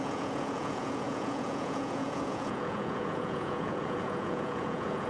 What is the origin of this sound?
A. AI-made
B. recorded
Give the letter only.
A